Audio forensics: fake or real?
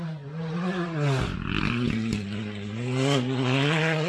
real